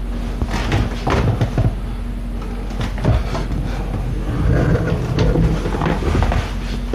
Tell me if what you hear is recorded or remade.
recorded